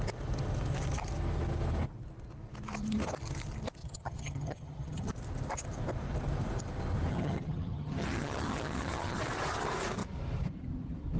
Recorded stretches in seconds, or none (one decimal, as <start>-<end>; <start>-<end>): 0.0-3.8; 5.1-7.1; 9.2-11.2